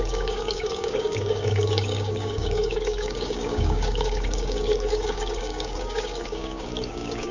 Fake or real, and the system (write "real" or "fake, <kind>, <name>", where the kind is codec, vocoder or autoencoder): fake, codec, DAC